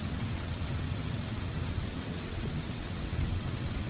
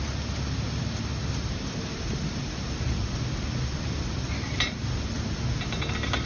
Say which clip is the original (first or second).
second